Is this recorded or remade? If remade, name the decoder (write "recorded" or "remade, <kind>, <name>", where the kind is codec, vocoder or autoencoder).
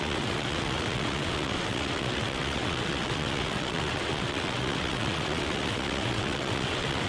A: remade, vocoder, WaveNeXt